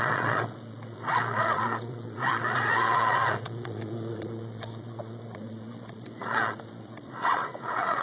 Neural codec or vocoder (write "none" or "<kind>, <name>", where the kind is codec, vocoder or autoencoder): vocoder, Vocos